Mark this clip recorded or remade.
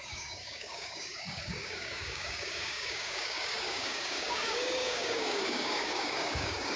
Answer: remade